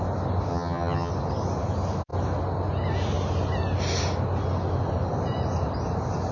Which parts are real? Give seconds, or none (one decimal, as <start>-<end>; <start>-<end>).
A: 0.0-0.5; 1.1-6.3